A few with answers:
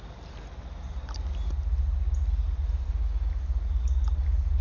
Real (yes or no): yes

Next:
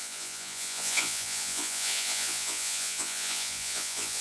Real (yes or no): no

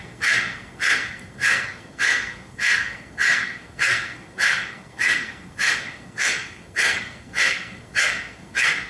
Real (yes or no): no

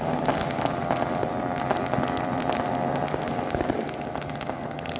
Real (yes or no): yes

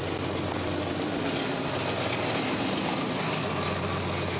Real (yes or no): yes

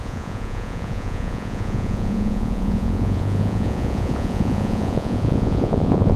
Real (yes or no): no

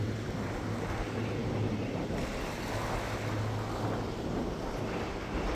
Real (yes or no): yes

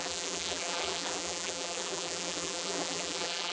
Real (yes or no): no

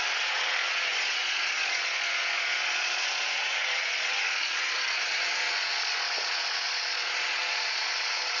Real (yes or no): no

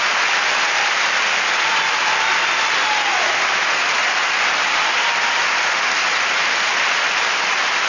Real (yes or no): yes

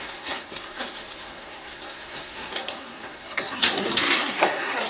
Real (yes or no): no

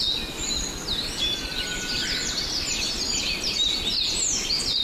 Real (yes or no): yes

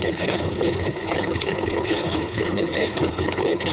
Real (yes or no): no